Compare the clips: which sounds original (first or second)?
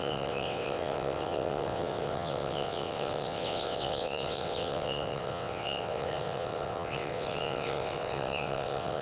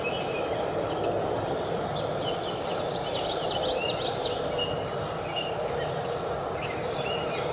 second